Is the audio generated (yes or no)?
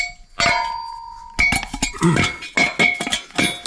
no